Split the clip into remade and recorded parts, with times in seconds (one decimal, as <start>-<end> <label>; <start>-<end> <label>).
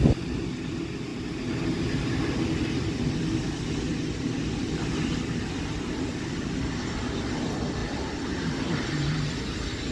0.0-7.8 recorded; 7.8-9.3 remade; 9.3-9.9 recorded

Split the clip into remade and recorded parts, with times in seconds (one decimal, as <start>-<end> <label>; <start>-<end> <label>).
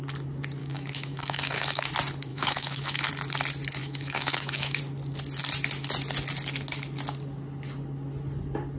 0.0-0.6 recorded; 0.6-1.9 remade; 1.9-2.3 recorded; 2.3-3.1 remade; 3.1-3.8 recorded; 3.8-4.8 remade; 4.8-8.8 recorded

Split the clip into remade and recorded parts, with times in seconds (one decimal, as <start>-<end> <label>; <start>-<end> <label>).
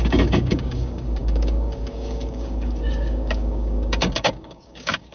0.0-5.1 remade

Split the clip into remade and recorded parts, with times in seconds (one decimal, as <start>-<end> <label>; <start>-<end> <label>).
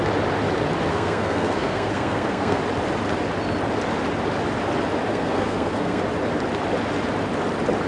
0.0-0.9 recorded; 0.9-2.6 remade; 2.6-5.1 recorded; 5.1-6.0 remade; 6.0-7.9 recorded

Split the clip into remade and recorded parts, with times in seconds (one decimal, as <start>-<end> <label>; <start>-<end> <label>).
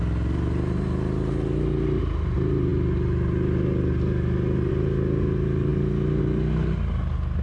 0.0-7.4 recorded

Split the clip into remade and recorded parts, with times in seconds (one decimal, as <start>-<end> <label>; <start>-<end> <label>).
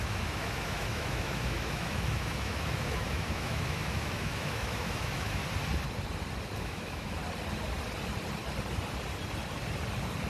0.0-5.4 remade; 5.4-6.6 recorded; 6.6-7.2 remade; 7.2-10.3 recorded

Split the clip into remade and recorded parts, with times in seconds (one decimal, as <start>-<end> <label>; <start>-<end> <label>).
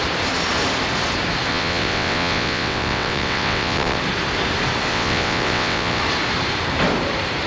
0.0-1.5 recorded; 1.5-4.0 remade; 4.0-4.9 recorded; 4.9-6.0 remade; 6.0-7.5 recorded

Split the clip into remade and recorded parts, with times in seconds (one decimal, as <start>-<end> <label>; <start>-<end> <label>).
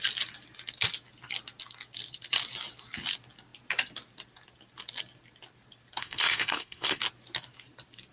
0.0-6.0 recorded; 6.0-7.0 remade; 7.0-8.1 recorded